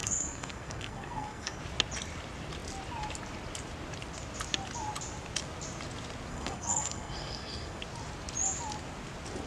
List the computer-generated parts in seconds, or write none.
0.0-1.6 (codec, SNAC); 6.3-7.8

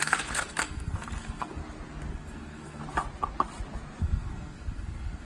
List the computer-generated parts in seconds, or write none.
0.0-1.6 (codec, SNAC); 2.1-2.8; 4.0-5.3

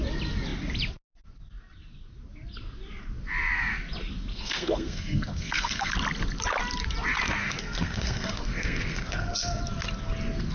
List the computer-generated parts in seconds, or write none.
4.3-5.9 (codec, SNAC); 7.4-9.6

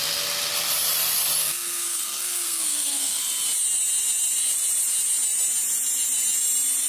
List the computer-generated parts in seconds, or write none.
1.4-3.2 (codec, SNAC)

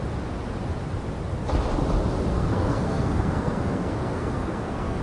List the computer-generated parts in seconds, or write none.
2.3-5.0 (codec, SNAC)

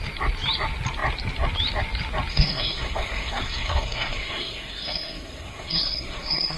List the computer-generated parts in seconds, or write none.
2.3-6.6 (codec, SNAC)

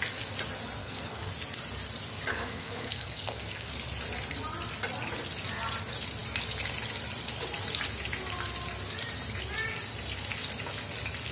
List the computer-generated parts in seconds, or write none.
0.8-1.3 (codec, SNAC); 2.3-3.7